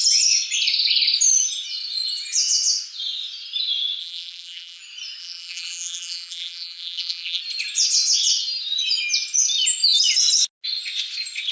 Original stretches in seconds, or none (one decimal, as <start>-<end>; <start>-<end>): 0.0-4.0; 4.8-5.2; 7.4-11.5